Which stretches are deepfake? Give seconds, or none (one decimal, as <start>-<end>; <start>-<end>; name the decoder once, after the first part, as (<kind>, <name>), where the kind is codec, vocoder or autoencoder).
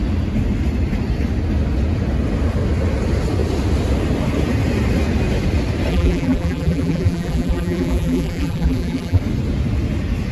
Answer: 5.9-9.2 (vocoder, BigVGAN v2)